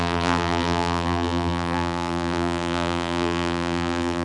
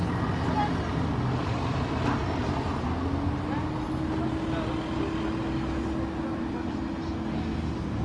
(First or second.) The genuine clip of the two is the second